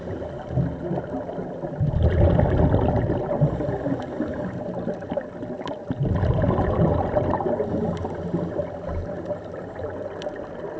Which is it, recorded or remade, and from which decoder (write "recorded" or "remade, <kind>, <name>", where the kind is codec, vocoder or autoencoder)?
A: recorded